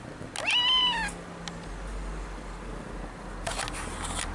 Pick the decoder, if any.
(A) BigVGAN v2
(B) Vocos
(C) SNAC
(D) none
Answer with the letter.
D